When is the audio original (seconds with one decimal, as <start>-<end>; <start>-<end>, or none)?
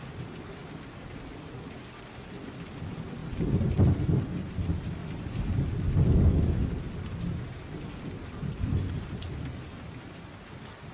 0.0-5.0; 5.5-10.9